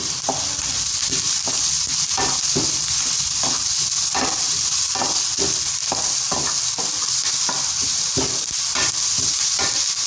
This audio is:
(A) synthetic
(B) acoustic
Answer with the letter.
B